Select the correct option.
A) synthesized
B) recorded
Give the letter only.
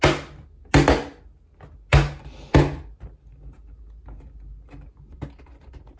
B